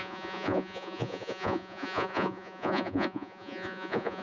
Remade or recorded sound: remade